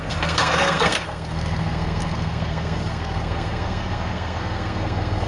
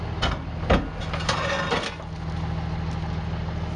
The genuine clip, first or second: second